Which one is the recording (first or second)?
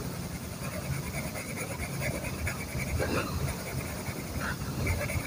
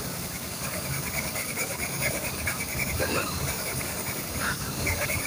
first